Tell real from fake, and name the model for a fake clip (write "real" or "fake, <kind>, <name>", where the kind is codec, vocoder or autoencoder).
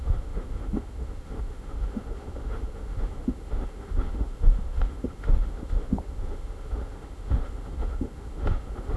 fake, autoencoder, DAC-VAE